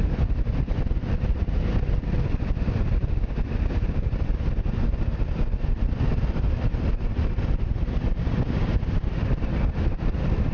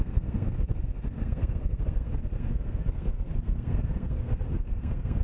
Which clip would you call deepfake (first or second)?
second